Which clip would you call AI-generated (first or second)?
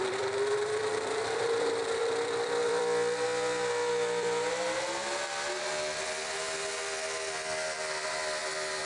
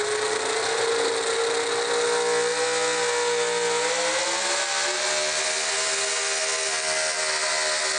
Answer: first